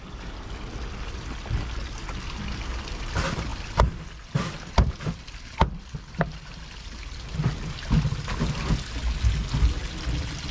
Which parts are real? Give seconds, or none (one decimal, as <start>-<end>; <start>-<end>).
0.0-10.5